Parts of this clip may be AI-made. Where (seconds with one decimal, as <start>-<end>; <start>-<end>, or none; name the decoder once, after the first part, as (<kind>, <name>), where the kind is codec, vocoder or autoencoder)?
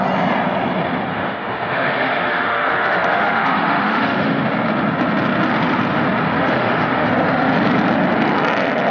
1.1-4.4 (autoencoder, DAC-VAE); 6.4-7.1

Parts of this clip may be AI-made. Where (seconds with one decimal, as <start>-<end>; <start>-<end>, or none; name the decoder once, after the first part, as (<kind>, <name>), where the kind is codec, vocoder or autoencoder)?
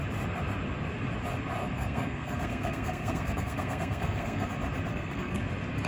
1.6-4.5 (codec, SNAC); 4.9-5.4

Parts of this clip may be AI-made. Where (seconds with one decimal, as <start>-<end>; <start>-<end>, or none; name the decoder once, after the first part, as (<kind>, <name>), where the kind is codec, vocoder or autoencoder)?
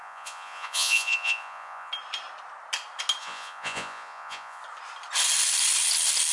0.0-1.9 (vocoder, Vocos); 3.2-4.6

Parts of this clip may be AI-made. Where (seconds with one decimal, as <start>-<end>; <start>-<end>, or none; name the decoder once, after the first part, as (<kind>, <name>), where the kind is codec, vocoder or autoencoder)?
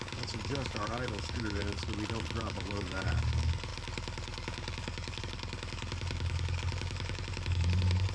0.0-1.6 (codec, DAC); 2.5-8.1